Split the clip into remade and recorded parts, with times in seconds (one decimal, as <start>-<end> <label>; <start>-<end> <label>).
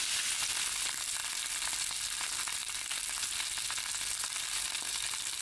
0.0-5.4 recorded